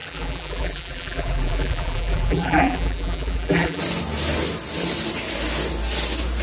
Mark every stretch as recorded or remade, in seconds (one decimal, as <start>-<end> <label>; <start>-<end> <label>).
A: 0.0-3.8 remade; 3.8-6.4 recorded